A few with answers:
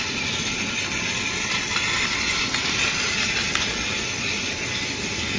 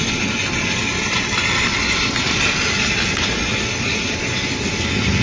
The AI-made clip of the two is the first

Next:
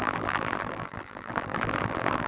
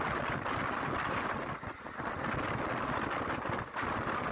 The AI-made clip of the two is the first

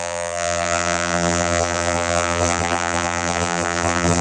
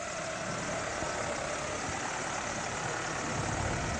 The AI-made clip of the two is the first